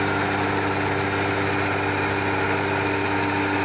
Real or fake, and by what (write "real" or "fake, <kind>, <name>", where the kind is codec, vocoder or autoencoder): real